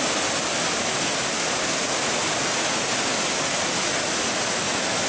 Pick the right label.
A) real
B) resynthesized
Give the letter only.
A